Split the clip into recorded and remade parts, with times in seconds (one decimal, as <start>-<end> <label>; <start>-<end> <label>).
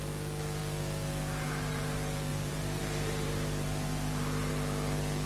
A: 0.0-2.3 recorded; 2.3-4.5 remade; 4.5-5.3 recorded